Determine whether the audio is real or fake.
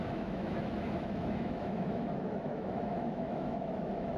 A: fake